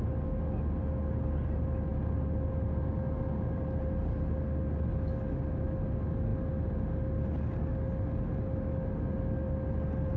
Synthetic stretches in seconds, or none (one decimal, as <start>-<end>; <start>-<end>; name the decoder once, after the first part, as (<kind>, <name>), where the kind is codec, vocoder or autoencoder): none